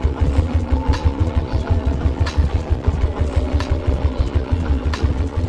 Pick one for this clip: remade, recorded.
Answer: remade